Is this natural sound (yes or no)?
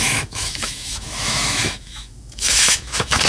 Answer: no